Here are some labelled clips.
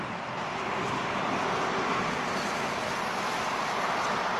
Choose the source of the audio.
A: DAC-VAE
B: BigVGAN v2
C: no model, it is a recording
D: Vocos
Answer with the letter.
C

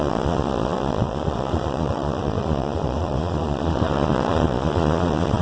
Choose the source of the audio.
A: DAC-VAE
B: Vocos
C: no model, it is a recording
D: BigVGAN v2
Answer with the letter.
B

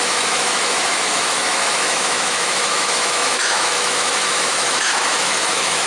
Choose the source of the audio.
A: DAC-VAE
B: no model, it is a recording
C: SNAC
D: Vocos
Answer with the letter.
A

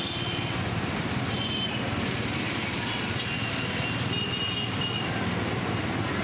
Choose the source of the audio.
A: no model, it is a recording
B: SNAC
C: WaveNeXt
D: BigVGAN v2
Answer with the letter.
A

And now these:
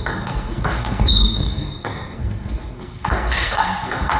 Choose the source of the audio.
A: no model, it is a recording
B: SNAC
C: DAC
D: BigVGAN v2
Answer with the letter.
B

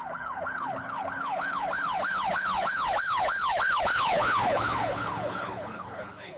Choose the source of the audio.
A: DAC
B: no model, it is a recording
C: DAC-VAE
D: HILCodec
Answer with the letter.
D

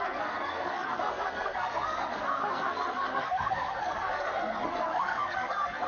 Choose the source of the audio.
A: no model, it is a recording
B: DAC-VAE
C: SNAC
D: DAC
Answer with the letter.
C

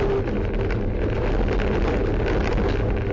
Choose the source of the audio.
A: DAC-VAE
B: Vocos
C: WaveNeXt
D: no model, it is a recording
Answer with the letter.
D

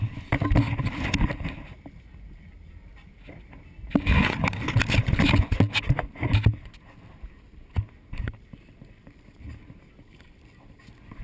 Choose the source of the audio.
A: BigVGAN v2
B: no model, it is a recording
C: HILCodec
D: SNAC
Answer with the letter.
B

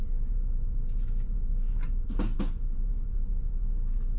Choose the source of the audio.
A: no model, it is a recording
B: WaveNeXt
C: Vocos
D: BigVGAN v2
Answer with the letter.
D